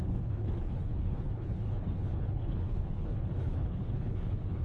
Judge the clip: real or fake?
fake